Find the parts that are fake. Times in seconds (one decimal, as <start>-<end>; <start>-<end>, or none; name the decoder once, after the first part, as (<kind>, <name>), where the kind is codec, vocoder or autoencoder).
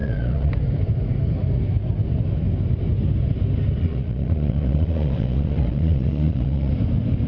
0.0-0.5 (vocoder, Vocos); 3.8-6.7